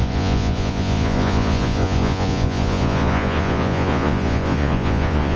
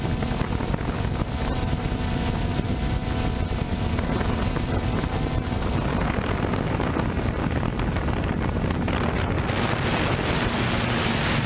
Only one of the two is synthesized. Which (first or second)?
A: first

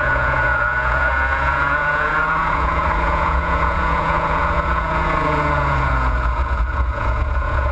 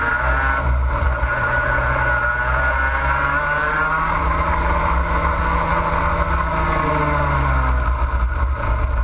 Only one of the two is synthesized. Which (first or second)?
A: first